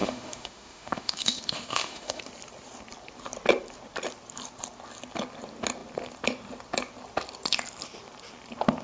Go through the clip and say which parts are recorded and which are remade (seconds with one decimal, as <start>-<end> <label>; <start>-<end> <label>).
0.0-2.2 remade; 2.2-8.8 recorded